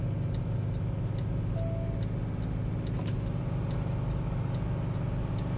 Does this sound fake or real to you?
real